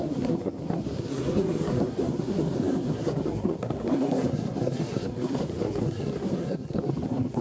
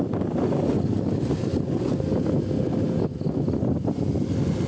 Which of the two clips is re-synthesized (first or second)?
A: first